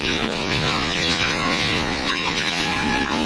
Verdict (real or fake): fake